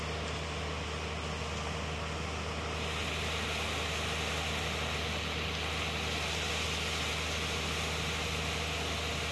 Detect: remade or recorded recorded